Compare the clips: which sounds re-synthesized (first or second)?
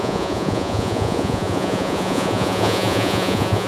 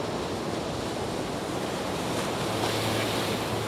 first